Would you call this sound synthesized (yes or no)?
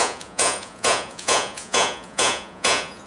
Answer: yes